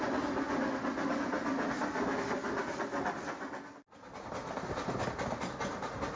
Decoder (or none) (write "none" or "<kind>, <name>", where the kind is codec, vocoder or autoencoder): none